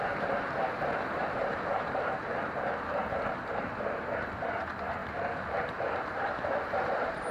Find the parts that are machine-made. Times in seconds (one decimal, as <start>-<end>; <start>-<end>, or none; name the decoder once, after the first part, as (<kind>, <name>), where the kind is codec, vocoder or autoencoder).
0.0-7.3 (vocoder, BigVGAN v2)